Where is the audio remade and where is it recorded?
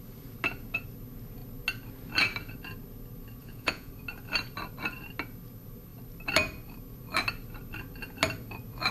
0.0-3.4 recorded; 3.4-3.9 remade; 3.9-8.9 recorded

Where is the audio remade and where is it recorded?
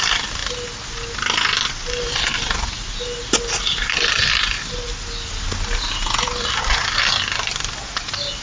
0.0-8.4 recorded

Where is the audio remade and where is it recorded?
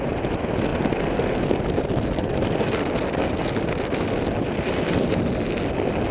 0.0-6.1 recorded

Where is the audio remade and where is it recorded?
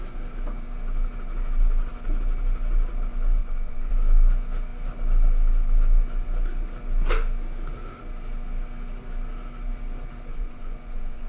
0.0-3.4 recorded; 3.4-3.9 remade; 3.9-10.3 recorded; 10.3-11.3 remade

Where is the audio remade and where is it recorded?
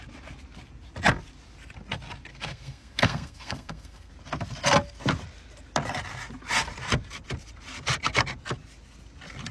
0.0-2.3 recorded; 2.3-4.1 remade; 4.1-9.5 recorded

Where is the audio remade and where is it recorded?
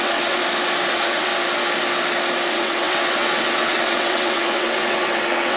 0.0-0.4 remade; 0.4-0.9 recorded; 0.9-1.3 remade; 1.3-2.5 recorded; 2.5-5.6 remade